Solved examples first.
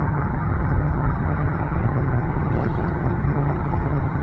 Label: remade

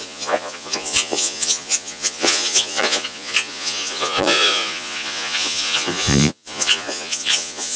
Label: remade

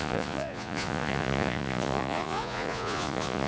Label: remade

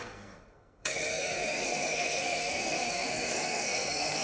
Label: remade